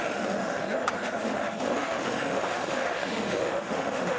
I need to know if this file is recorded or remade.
remade